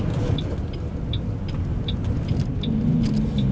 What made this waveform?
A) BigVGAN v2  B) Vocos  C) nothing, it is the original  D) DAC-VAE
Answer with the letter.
C